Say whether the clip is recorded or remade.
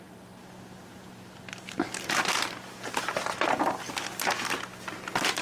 recorded